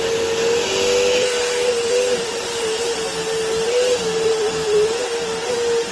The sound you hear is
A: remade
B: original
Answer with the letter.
B